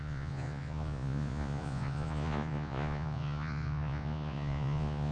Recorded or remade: remade